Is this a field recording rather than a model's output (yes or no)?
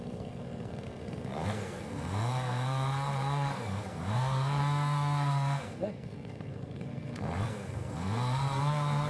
no